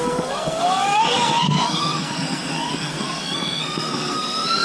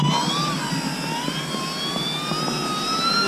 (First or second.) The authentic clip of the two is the second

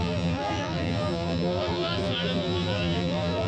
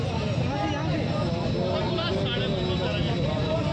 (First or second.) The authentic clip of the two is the second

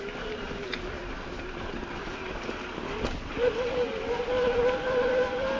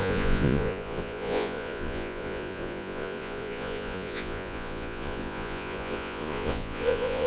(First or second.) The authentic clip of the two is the first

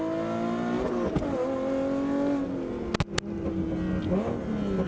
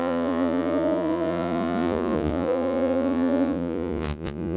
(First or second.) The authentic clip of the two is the first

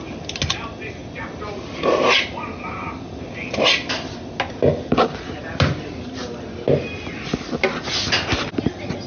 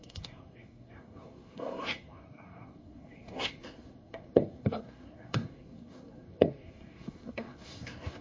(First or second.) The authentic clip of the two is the first